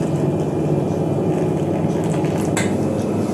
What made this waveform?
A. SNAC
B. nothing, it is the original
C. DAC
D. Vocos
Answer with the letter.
B